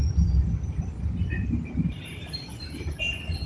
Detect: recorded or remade recorded